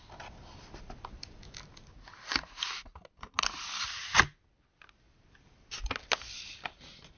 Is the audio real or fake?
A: real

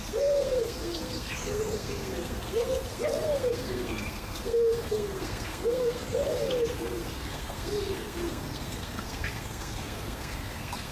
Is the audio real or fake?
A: fake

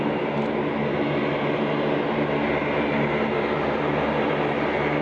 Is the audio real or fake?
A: real